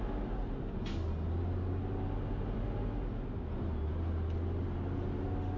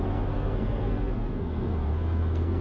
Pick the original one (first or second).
first